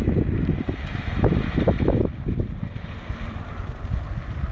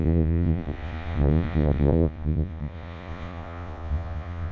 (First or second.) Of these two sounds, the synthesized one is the second